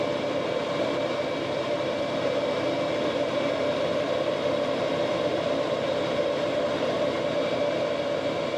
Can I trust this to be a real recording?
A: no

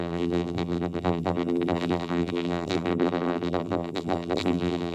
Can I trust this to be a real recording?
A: no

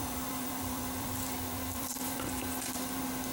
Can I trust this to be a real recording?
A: no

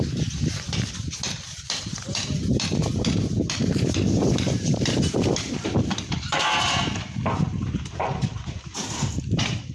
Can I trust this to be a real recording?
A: no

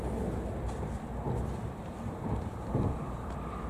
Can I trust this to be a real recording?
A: no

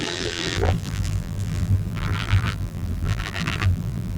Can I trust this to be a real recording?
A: no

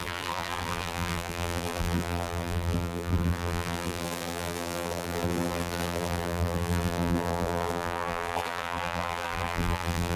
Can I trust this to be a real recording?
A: no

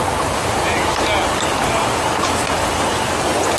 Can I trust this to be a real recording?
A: yes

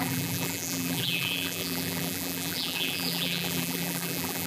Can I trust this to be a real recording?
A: no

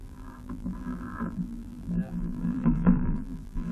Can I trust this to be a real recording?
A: no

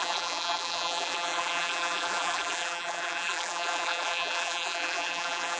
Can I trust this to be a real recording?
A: no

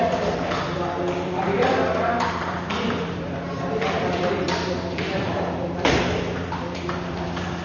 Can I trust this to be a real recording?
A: no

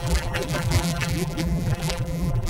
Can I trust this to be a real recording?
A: no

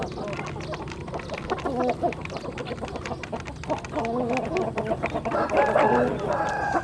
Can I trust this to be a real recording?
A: yes